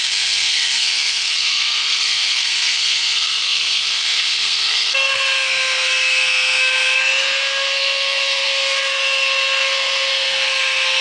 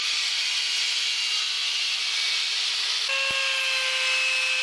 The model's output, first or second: first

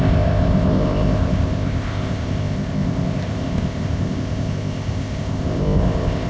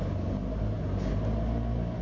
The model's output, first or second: first